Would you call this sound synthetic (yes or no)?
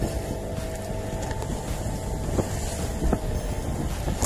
no